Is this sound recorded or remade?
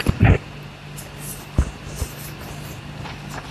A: recorded